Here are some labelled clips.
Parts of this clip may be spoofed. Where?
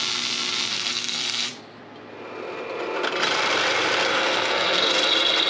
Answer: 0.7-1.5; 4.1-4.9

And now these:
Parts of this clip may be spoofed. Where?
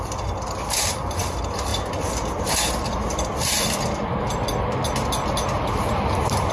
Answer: none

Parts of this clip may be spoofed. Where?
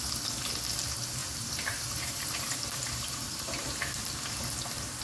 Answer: 1.2-4.1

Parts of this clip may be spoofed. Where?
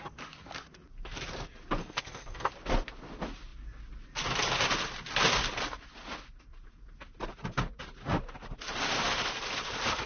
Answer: 1.8-2.5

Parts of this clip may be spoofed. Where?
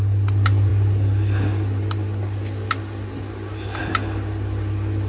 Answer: none